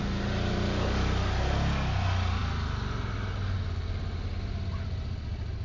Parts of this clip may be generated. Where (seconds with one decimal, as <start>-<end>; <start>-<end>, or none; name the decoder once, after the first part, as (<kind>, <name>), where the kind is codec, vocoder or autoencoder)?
none